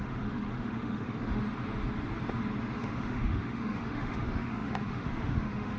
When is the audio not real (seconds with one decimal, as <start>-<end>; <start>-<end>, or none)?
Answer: 0.0-1.4; 2.7-5.8